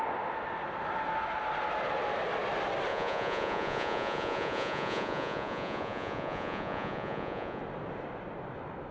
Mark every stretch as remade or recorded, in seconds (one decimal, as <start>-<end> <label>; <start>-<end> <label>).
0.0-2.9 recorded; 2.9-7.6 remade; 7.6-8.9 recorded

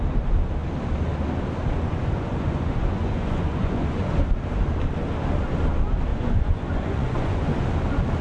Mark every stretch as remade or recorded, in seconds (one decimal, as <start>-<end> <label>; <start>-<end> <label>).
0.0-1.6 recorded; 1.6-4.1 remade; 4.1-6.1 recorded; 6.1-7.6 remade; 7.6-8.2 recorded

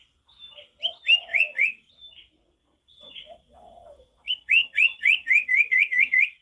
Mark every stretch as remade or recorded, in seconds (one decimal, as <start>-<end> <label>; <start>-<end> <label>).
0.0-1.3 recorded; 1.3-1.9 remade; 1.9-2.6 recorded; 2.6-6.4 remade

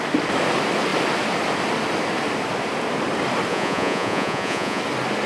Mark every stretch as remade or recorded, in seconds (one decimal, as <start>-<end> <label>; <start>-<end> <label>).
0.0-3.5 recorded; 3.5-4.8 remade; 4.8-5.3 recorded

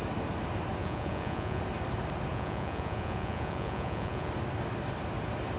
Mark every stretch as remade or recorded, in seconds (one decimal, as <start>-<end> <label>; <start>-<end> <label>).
0.0-0.8 recorded; 0.8-1.6 remade; 1.6-2.3 recorded; 2.3-4.3 remade; 4.3-5.6 recorded

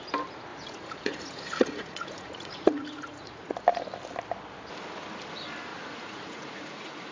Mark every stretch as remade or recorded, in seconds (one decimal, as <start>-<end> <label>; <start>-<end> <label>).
0.0-0.5 recorded; 0.5-3.5 remade; 3.5-5.7 recorded; 5.7-7.1 remade